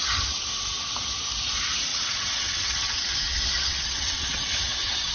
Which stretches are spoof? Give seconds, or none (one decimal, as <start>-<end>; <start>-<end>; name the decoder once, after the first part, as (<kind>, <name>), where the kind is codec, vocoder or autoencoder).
1.9-5.1 (vocoder, WaveNeXt)